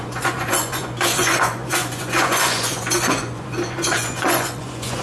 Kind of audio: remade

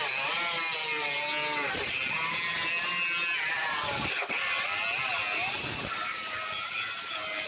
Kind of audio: recorded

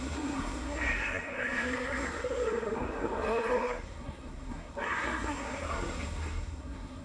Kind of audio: remade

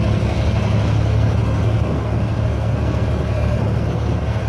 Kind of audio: remade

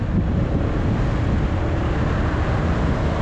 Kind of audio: recorded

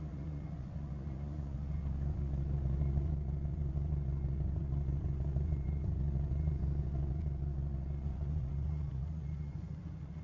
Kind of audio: remade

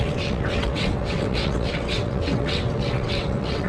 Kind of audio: remade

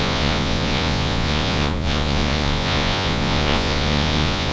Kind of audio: remade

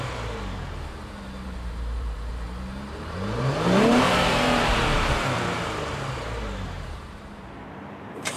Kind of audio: remade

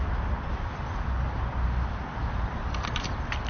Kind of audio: recorded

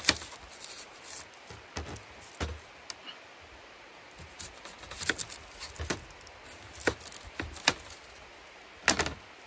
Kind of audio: recorded